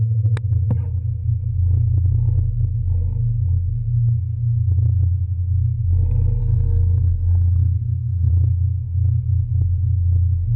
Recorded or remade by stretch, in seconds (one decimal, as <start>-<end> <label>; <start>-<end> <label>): 0.0-6.4 recorded; 6.4-8.3 remade; 8.3-10.6 recorded